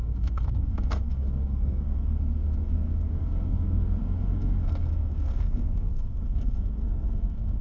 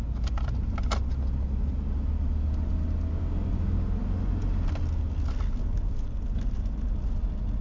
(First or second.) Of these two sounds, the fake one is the first